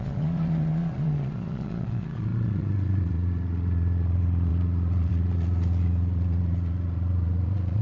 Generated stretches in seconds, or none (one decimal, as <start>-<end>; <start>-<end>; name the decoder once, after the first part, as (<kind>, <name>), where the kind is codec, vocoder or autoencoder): 0.0-7.8 (vocoder, Vocos)